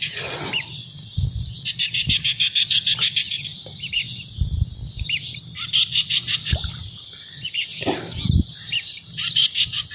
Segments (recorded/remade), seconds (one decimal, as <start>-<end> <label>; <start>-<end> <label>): 0.0-9.9 recorded